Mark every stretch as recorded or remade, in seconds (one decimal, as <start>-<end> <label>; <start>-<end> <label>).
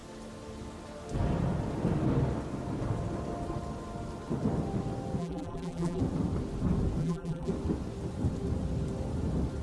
0.0-5.2 recorded; 5.2-6.0 remade; 6.0-7.0 recorded; 7.0-7.5 remade; 7.5-9.6 recorded